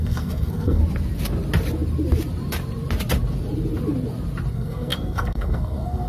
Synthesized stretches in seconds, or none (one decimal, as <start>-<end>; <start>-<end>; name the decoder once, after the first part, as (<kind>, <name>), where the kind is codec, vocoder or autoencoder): 0.0-0.8 (codec, SNAC); 4.5-6.1